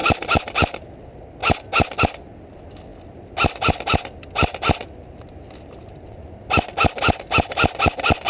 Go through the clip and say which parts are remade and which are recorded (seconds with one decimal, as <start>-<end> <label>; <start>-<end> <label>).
0.0-0.9 remade; 0.9-2.9 recorded; 2.9-6.2 remade; 6.2-8.3 recorded